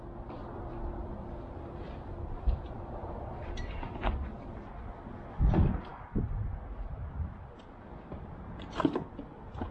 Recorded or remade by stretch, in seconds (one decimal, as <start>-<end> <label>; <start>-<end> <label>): 0.0-1.0 recorded; 1.0-4.6 remade; 4.6-5.9 recorded; 5.9-8.4 remade; 8.4-9.7 recorded